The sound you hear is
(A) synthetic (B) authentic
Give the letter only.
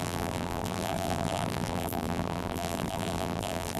A